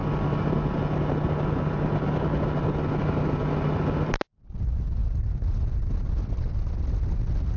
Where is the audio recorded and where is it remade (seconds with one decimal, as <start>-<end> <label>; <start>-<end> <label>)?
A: 0.0-7.6 recorded